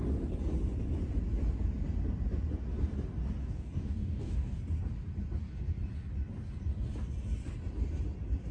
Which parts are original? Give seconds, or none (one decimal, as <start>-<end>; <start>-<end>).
0.0-3.4; 4.6-8.5